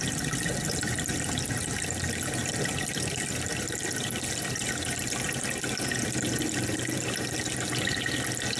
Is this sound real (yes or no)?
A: yes